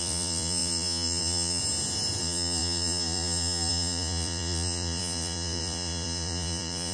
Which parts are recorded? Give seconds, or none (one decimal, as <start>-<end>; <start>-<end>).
1.6-2.2